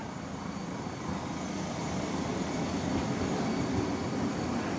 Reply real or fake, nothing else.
real